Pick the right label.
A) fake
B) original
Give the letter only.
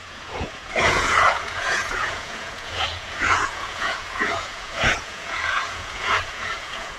A